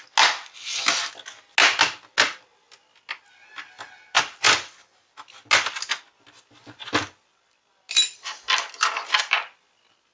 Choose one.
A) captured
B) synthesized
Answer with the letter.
A